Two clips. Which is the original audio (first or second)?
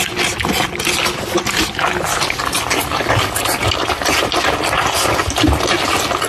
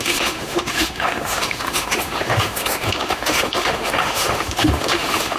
first